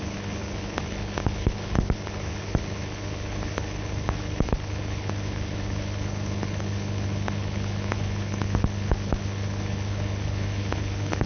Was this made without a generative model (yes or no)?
no